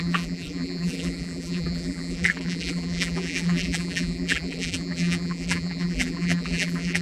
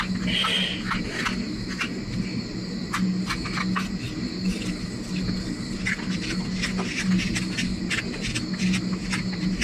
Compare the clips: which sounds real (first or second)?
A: second